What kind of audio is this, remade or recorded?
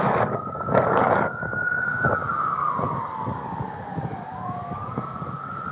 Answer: remade